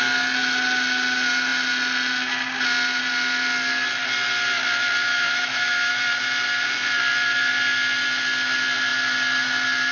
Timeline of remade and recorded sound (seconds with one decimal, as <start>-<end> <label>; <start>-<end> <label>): 0.0-5.1 recorded; 5.1-5.9 remade; 5.9-9.9 recorded